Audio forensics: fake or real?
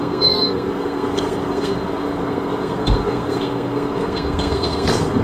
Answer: fake